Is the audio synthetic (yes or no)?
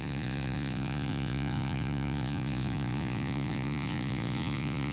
yes